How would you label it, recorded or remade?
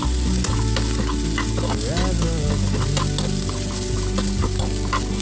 recorded